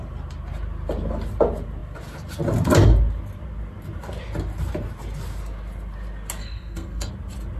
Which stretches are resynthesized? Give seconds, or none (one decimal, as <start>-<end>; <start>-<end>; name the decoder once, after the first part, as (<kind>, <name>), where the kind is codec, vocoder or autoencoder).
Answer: 6.4-7.1 (codec, SNAC)